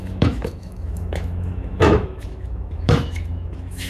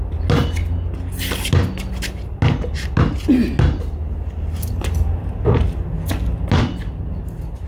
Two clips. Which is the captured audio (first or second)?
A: second